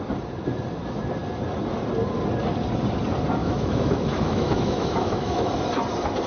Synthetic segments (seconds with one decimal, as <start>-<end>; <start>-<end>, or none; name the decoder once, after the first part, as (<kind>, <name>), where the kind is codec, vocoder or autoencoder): 3.4-5.5 (autoencoder, DAC-VAE)